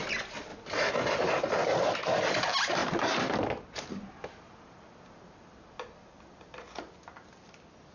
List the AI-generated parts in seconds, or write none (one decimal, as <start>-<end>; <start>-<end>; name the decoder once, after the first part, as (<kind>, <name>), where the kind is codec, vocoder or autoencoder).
none